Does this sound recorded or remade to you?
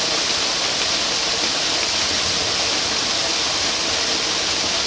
recorded